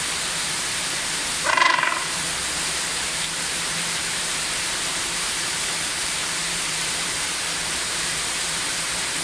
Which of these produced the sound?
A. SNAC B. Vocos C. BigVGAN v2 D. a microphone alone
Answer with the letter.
C